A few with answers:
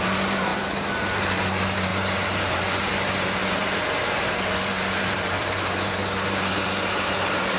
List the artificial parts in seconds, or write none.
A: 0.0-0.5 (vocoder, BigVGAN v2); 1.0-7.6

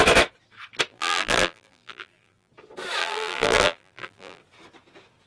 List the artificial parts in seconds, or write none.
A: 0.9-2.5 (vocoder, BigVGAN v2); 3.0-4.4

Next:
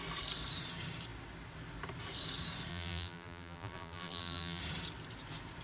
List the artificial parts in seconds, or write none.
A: 2.7-4.6 (vocoder, BigVGAN v2)